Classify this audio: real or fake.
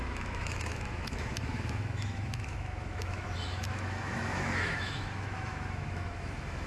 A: fake